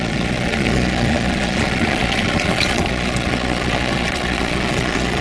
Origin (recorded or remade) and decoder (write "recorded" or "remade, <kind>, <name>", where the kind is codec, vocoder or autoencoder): remade, vocoder, Vocos